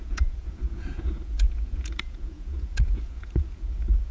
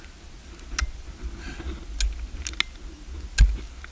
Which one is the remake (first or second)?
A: first